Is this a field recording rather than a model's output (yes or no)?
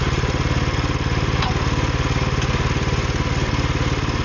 yes